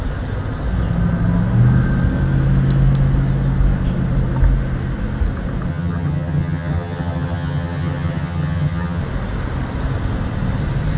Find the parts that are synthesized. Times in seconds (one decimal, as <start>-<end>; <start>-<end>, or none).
5.7-9.0